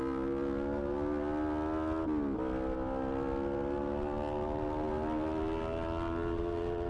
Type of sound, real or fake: real